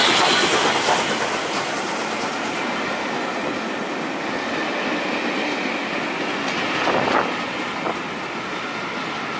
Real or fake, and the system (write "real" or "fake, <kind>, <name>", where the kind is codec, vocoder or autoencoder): real